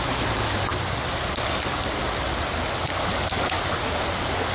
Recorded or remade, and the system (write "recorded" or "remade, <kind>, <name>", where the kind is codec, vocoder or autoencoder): recorded